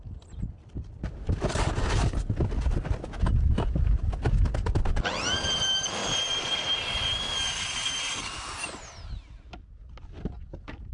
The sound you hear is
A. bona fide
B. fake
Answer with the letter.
A